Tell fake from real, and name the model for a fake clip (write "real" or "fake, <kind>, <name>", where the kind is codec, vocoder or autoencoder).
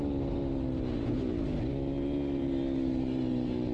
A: real